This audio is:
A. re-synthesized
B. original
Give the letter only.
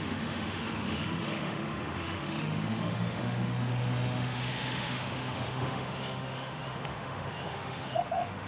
A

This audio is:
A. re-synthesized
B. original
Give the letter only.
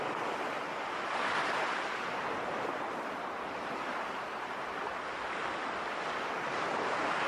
B